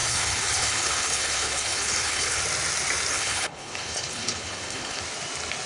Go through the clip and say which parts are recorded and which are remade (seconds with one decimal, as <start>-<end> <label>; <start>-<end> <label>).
0.0-2.4 remade; 2.4-3.1 recorded; 3.1-5.0 remade; 5.0-5.7 recorded